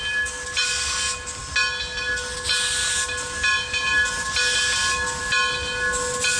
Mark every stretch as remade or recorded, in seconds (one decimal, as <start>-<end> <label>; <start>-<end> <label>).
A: 0.0-6.4 recorded